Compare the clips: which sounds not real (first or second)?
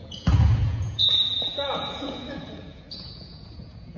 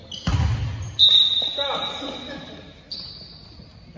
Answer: first